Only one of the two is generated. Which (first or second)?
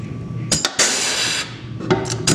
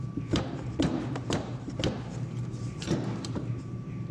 second